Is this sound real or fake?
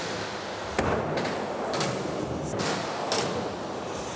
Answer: real